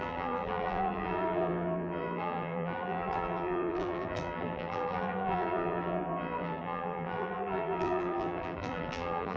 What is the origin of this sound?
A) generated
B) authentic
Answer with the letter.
A